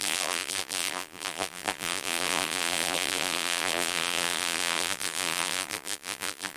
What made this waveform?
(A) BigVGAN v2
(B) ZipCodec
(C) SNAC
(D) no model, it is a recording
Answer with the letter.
A